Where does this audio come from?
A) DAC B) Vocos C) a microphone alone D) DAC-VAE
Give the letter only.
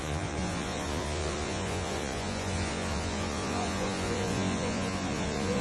B